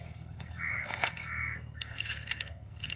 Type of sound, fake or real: fake